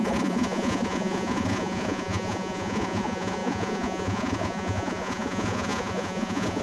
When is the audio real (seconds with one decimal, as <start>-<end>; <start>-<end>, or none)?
none